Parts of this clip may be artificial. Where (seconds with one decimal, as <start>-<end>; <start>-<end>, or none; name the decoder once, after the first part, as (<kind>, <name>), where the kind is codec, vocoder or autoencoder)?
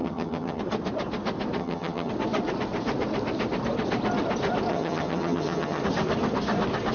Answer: 0.0-0.6 (vocoder, HiFi-GAN); 1.6-2.1; 4.7-5.8